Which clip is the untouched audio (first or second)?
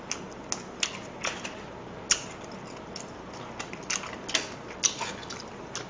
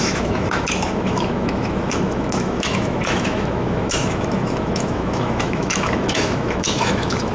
first